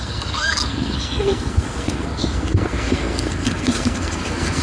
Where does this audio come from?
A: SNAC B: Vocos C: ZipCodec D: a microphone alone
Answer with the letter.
A